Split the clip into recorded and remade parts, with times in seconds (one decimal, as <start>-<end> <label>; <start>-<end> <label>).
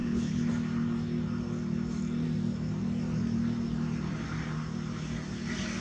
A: 0.0-0.5 remade; 0.5-5.8 recorded